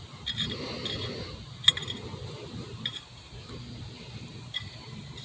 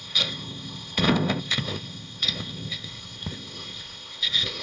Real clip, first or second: first